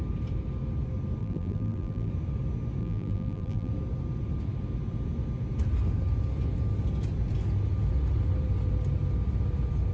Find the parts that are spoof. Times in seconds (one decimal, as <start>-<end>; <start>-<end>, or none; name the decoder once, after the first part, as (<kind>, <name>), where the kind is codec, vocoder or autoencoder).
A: 1.2-2.1 (vocoder, BigVGAN v2); 2.8-3.7